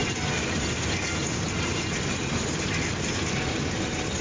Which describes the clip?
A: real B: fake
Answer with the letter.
A